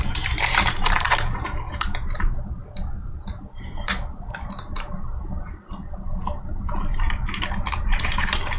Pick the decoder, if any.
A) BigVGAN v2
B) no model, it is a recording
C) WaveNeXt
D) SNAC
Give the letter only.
A